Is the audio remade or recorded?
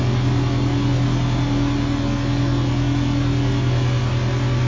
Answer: recorded